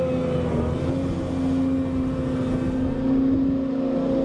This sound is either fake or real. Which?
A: real